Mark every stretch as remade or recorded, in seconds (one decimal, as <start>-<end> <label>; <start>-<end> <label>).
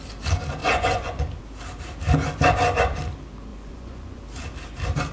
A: 0.0-0.6 recorded; 0.6-1.2 remade; 1.2-3.5 recorded; 3.5-4.2 remade; 4.2-5.1 recorded